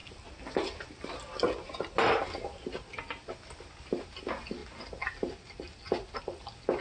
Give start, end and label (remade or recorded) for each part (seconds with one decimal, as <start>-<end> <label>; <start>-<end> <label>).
0.0-6.8 recorded